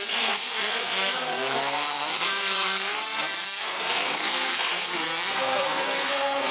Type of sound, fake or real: fake